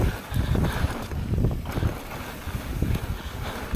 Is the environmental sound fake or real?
real